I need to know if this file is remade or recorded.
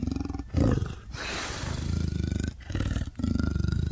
recorded